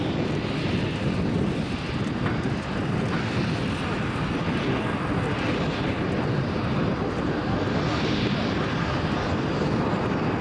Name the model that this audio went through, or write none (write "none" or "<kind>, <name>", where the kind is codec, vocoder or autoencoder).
none